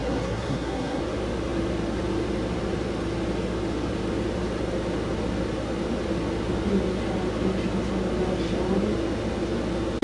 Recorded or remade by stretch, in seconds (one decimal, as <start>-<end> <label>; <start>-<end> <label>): 0.0-1.0 remade; 1.0-10.0 recorded